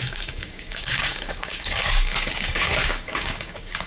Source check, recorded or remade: remade